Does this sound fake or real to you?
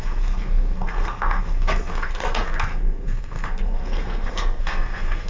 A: fake